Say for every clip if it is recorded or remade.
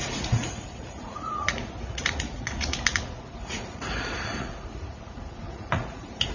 remade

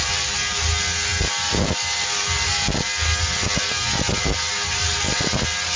recorded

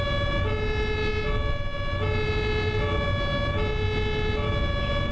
recorded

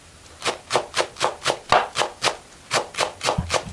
recorded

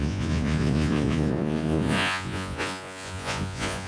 remade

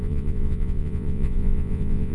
remade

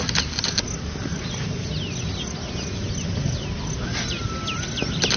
recorded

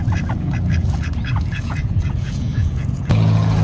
remade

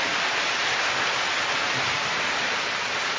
recorded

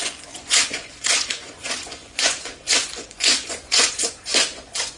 remade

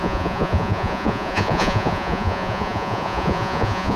remade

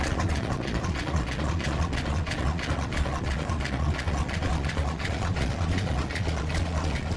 remade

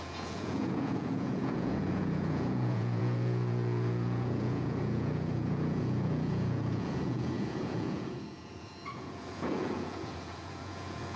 remade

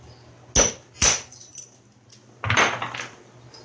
recorded